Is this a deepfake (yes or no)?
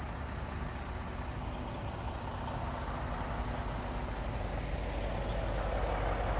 no